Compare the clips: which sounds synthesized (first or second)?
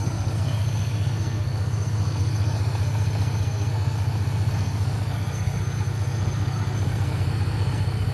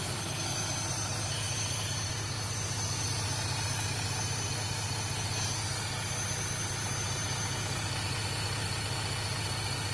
first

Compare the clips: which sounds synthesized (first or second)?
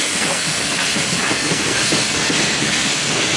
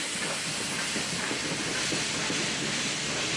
first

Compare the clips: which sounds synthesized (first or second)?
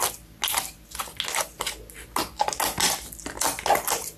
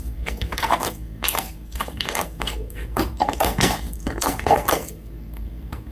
second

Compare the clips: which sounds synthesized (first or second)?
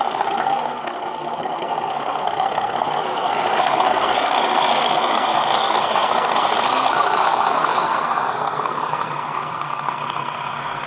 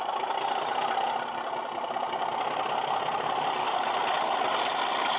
first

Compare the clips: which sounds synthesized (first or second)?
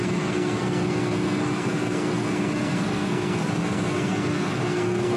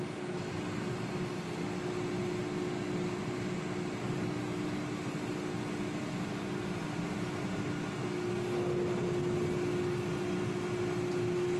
first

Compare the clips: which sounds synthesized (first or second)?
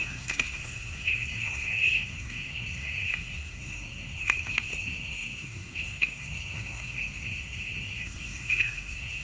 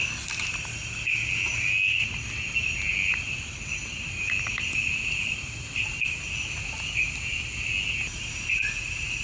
first